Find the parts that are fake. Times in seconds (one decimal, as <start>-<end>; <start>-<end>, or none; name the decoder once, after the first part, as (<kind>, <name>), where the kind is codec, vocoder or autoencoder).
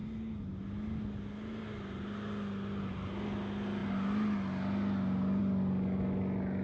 none